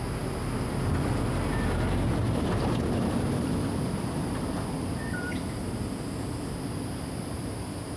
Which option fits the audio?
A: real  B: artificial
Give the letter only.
A